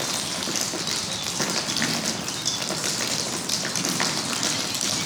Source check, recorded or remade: recorded